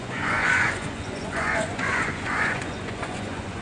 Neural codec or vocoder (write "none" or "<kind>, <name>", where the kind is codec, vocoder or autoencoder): vocoder, Vocos